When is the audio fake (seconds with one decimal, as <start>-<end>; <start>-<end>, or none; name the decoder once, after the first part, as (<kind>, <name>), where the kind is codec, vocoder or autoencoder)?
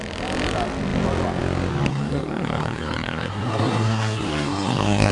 1.9-5.1 (codec, SNAC)